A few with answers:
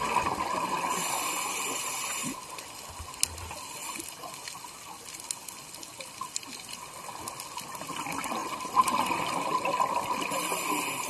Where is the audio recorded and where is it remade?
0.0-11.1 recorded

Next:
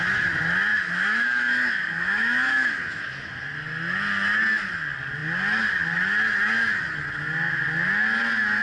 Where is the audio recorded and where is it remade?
0.0-0.7 recorded; 0.7-3.3 remade; 3.3-8.6 recorded

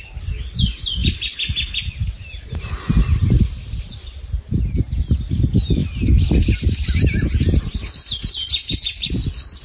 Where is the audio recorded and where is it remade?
0.0-9.6 recorded

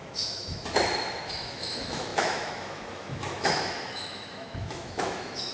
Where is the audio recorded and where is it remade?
0.0-5.5 remade

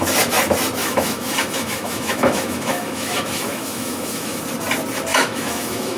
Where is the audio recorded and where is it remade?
0.0-0.8 recorded; 0.8-4.4 remade; 4.4-5.1 recorded; 5.1-6.0 remade

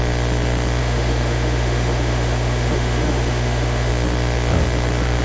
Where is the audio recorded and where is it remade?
0.0-0.8 recorded; 0.8-3.9 remade; 3.9-5.2 recorded

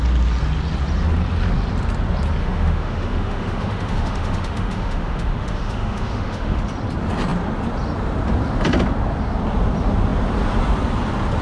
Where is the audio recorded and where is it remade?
0.0-2.4 recorded; 2.4-6.6 remade; 6.6-11.4 recorded

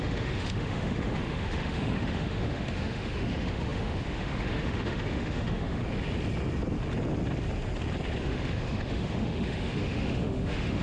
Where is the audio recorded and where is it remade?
0.0-5.8 remade; 5.8-8.2 recorded; 8.2-10.8 remade